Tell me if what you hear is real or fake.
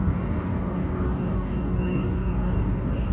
fake